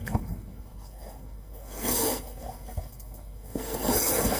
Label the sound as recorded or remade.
remade